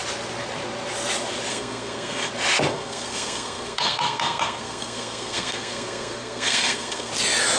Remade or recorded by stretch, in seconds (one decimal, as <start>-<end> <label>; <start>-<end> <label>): 0.0-1.5 recorded; 1.5-2.3 remade; 2.3-2.7 recorded; 2.7-7.1 remade; 7.1-7.6 recorded